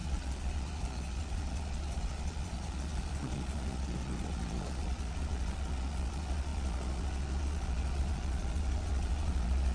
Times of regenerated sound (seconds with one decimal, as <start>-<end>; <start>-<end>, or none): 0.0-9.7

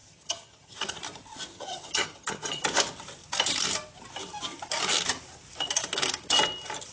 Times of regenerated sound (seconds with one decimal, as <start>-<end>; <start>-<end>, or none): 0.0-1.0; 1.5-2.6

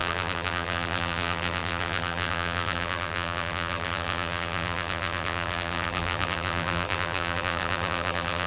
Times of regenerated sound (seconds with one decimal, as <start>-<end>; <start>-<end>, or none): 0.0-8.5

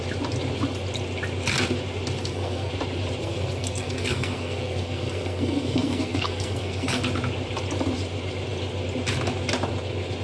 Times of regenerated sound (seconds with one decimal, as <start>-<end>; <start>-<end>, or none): 2.2-2.7; 3.2-7.0

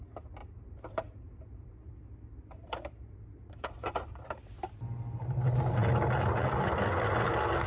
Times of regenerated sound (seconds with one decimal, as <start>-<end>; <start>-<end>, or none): 0.4-1.9; 2.6-4.7

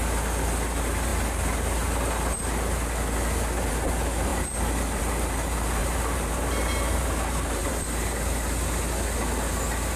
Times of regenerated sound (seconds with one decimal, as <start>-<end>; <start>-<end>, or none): 5.8-7.7

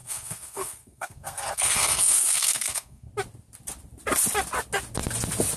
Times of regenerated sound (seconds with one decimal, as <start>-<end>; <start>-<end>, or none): 0.0-3.1

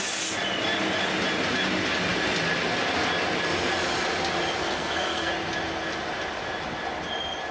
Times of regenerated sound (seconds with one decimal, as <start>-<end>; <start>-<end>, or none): 4.6-5.3